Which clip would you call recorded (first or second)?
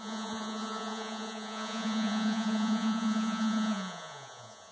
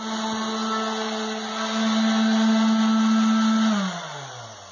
second